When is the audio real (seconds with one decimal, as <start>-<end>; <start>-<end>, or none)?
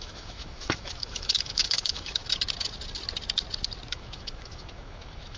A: 2.2-3.9